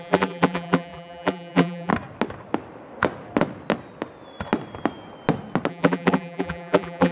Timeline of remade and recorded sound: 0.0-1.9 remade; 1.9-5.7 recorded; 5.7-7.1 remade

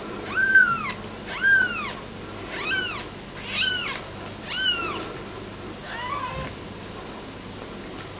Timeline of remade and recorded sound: 0.0-8.2 recorded

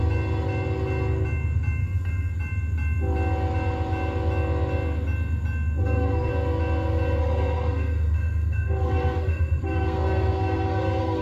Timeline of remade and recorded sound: 0.0-1.8 recorded; 1.8-2.4 remade; 2.4-5.8 recorded; 5.8-6.3 remade; 6.3-7.2 recorded; 7.2-11.2 remade

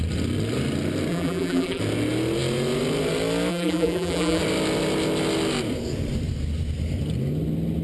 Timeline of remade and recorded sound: 0.0-1.1 recorded; 1.1-1.8 remade; 1.8-3.5 recorded; 3.5-4.4 remade; 4.4-7.8 recorded

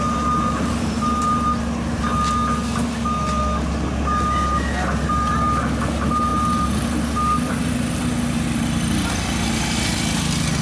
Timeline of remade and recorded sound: 0.0-10.6 recorded

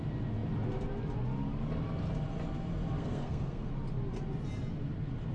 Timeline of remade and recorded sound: 0.0-3.0 recorded; 3.0-3.7 remade; 3.7-5.3 recorded